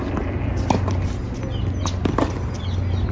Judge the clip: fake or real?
real